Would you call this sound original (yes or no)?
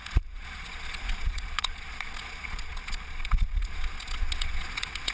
no